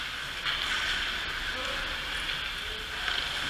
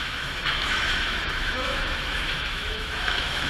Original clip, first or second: first